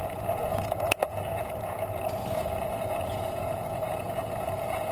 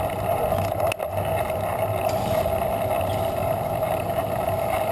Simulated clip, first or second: first